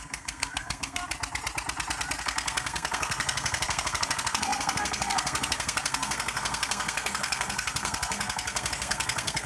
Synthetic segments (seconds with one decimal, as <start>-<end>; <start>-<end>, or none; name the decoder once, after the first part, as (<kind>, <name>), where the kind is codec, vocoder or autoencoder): 0.0-1.0 (codec, SNAC); 2.2-9.5